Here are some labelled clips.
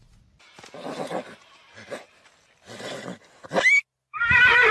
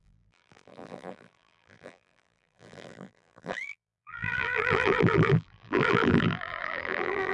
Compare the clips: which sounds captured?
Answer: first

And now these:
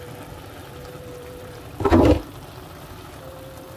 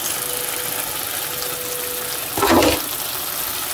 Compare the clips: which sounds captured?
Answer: second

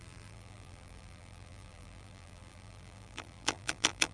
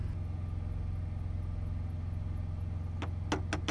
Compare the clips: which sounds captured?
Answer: second